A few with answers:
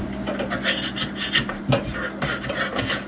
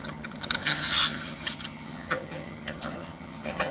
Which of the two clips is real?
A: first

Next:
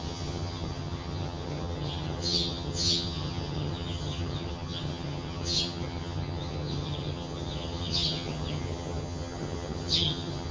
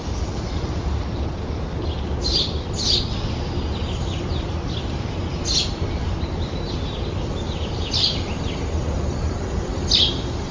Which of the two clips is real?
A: second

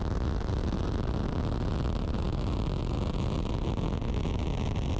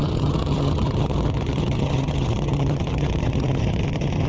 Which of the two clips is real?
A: first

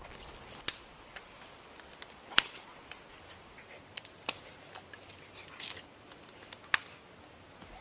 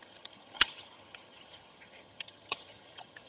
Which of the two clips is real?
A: first